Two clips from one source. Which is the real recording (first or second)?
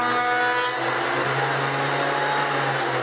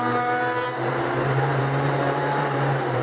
first